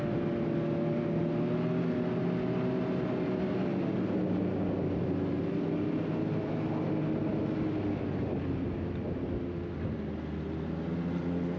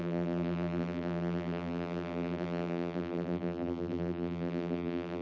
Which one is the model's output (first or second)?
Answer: second